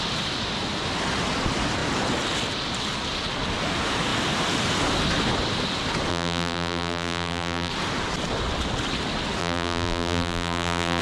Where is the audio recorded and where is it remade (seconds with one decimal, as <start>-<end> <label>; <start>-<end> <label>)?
0.0-6.1 recorded; 6.1-7.7 remade; 7.7-9.4 recorded; 9.4-11.0 remade